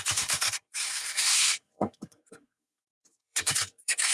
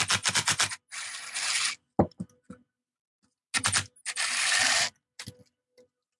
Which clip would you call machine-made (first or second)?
first